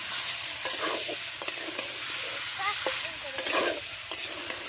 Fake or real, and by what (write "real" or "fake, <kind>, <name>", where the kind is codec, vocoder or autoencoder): real